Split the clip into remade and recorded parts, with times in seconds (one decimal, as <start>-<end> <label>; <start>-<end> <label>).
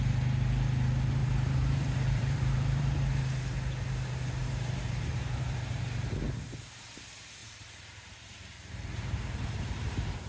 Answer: 0.0-1.2 recorded; 1.2-3.2 remade; 3.2-4.4 recorded; 4.4-5.8 remade; 5.8-7.4 recorded; 7.4-10.3 remade